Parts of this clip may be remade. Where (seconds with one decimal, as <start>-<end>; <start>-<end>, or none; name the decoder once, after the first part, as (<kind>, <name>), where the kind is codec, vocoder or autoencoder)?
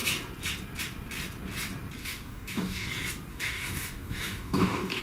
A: 2.0-2.9 (codec, DAC); 3.3-5.0